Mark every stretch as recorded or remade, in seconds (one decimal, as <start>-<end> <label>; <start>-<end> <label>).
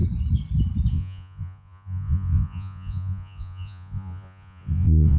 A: 0.0-0.9 recorded; 0.9-5.2 remade